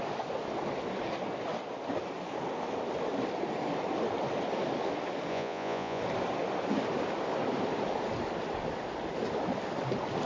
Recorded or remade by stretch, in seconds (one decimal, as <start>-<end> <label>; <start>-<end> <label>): 0.0-5.3 recorded; 5.3-6.0 remade; 6.0-10.3 recorded